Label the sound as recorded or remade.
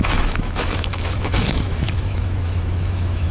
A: remade